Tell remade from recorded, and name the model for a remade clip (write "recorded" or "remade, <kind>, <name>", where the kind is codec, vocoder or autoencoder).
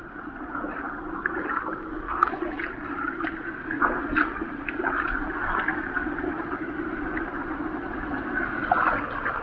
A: recorded